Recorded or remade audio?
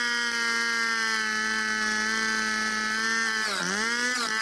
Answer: recorded